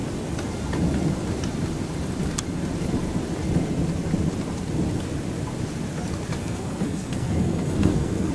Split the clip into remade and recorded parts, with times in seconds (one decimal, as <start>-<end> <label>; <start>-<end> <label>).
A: 0.0-6.4 recorded; 6.4-8.3 remade